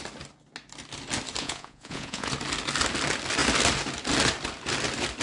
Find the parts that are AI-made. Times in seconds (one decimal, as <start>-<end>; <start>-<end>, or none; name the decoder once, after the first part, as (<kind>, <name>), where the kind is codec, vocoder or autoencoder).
1.4-2.3 (vocoder, Vocos)